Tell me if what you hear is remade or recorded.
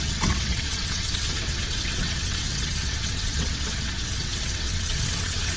remade